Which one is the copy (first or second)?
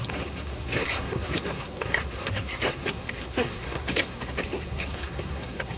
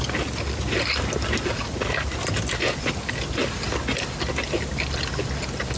first